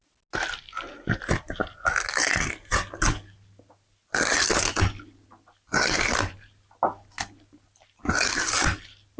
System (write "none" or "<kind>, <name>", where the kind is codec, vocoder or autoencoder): none